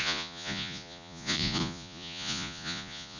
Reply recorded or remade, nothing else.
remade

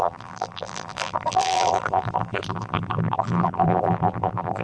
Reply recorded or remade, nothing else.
remade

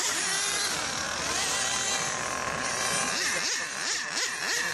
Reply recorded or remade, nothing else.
recorded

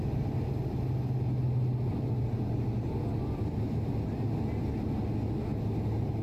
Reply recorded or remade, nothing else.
recorded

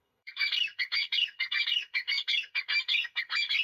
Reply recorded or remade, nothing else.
remade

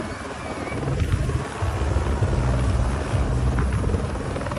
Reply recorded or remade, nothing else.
recorded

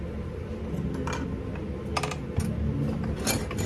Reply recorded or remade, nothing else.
recorded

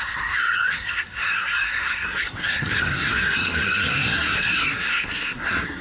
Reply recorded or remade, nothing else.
remade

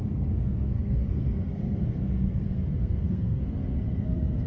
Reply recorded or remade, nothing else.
remade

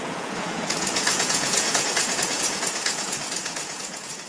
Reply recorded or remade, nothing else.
remade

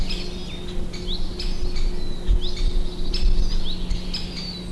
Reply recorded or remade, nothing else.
recorded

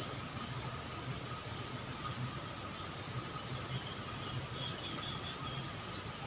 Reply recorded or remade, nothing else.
recorded